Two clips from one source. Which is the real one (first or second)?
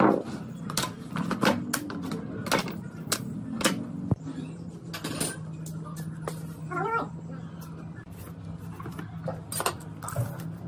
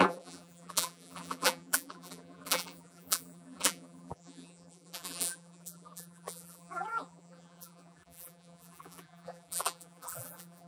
first